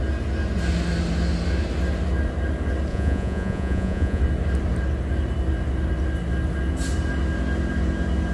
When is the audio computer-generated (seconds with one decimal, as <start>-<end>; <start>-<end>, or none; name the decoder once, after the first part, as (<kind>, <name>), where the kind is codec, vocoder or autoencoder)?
2.9-4.2 (vocoder, Vocos)